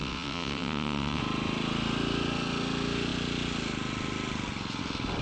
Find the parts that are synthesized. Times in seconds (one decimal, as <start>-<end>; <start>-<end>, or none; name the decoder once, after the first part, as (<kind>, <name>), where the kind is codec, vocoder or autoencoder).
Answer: 0.0-1.2 (vocoder, WaveNeXt)